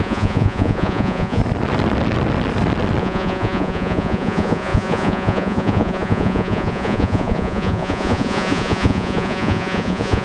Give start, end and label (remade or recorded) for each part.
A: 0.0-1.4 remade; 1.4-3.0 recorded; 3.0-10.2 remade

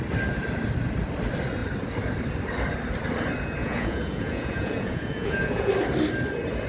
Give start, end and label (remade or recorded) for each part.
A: 0.0-3.6 recorded; 3.6-5.7 remade; 5.7-6.7 recorded

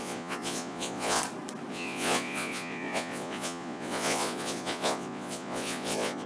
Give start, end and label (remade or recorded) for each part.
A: 0.0-1.2 remade; 1.2-1.7 recorded; 1.7-6.3 remade

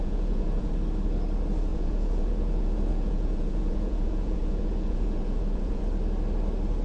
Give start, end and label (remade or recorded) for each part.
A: 0.0-0.7 remade; 0.7-1.7 recorded; 1.7-5.8 remade; 5.8-6.8 recorded

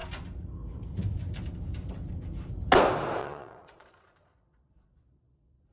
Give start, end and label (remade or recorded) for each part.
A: 0.0-3.2 recorded; 3.2-5.7 remade

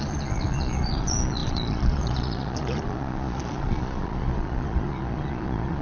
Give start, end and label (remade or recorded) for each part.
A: 0.0-5.8 remade

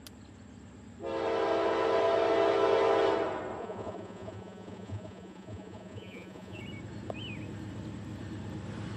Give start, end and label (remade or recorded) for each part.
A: 0.0-3.6 recorded; 3.6-6.6 remade; 6.6-9.0 recorded

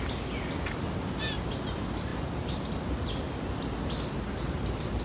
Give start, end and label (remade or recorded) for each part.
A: 0.0-5.0 recorded